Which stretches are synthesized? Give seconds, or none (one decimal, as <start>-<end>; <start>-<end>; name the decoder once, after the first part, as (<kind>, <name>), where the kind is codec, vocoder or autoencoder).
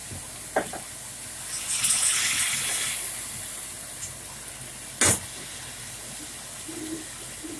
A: none